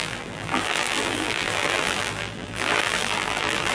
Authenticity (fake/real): fake